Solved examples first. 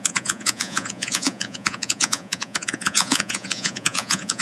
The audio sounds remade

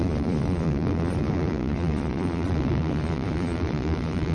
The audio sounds remade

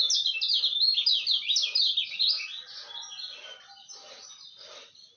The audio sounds recorded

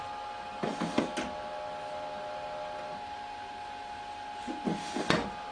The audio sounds recorded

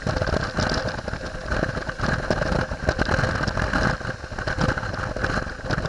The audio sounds recorded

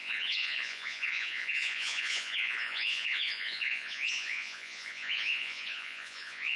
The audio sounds remade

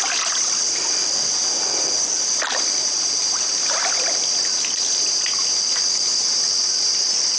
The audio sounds recorded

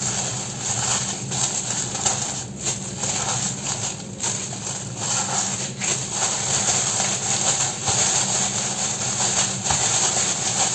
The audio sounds recorded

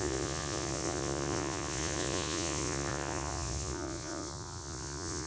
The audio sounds remade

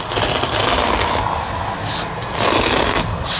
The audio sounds recorded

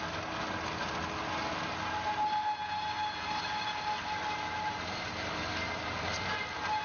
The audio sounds recorded